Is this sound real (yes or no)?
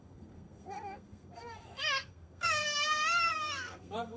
no